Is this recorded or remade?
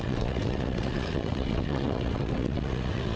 remade